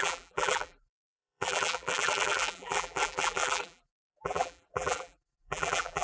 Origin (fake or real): fake